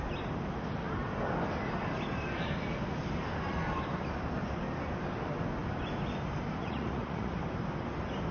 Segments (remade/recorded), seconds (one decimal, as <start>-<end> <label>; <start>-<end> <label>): 0.0-6.6 recorded; 6.6-7.4 remade; 7.4-8.3 recorded

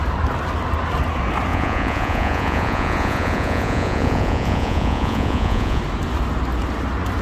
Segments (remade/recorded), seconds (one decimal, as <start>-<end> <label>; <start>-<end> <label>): 0.0-1.5 recorded; 1.5-5.8 remade; 5.8-7.2 recorded

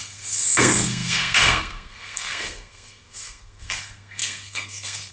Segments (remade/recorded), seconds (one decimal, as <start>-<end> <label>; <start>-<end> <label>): 0.0-5.1 remade

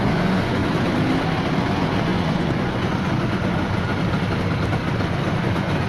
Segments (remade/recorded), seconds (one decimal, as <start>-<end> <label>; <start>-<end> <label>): 0.0-0.6 remade; 0.6-1.6 recorded; 1.6-3.9 remade; 3.9-4.9 recorded; 4.9-5.9 remade

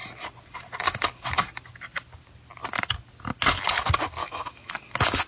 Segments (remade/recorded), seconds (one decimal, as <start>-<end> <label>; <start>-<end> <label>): 0.0-4.2 recorded; 4.2-4.7 remade; 4.7-5.3 recorded

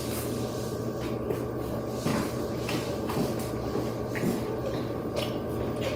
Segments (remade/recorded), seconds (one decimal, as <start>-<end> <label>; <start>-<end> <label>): 0.0-2.1 recorded; 2.1-3.8 remade; 3.8-4.6 recorded; 4.6-5.2 remade; 5.2-6.0 recorded